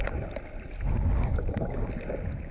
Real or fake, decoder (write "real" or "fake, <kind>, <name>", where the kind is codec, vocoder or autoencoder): real